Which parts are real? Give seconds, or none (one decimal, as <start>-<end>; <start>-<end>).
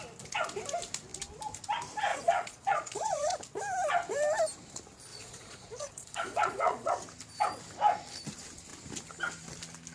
0.0-2.1; 3.4-5.1; 6.9-9.9